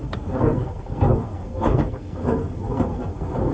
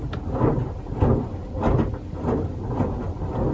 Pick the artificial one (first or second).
first